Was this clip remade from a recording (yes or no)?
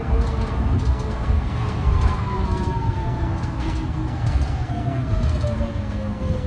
yes